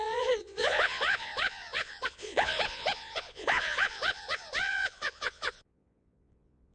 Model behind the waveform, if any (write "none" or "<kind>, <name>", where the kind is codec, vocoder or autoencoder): vocoder, Vocos